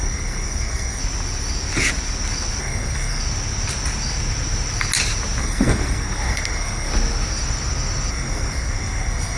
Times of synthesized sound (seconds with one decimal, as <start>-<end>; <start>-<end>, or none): 0.0-1.0; 2.6-3.2; 5.4-6.9; 8.1-9.4